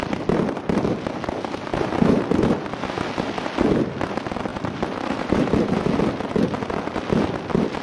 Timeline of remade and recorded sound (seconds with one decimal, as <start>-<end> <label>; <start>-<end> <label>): 0.0-4.5 recorded; 4.5-5.7 remade; 5.7-7.8 recorded